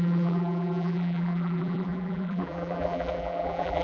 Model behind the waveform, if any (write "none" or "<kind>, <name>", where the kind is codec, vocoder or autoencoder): vocoder, BigVGAN v2